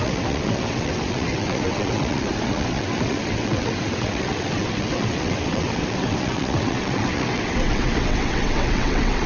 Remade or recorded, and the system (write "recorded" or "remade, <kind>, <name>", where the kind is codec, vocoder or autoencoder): remade, vocoder, WaveNeXt